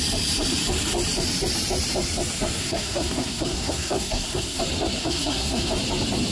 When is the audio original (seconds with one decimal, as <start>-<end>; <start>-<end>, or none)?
0.0-2.6; 4.6-5.0; 5.7-6.3